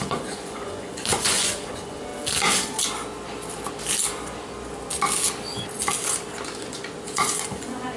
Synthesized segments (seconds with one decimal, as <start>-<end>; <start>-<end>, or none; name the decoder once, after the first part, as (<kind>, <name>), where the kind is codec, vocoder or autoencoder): 0.0-2.1 (vocoder, Vocos); 6.6-8.0